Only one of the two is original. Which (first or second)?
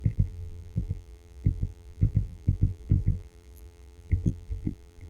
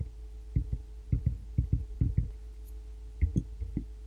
second